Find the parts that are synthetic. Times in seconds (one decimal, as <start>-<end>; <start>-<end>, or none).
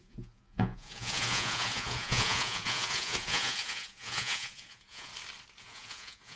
0.0-5.1; 5.6-6.4